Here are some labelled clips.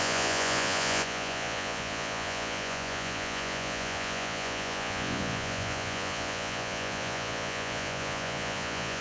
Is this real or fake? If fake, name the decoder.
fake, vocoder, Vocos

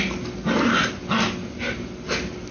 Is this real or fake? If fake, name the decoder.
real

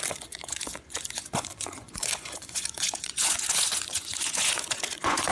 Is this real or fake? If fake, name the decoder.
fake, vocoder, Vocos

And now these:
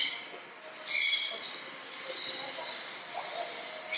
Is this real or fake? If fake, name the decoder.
real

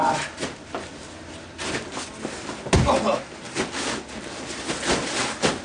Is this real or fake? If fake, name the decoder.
real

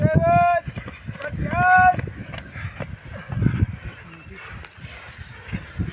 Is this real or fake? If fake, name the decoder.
real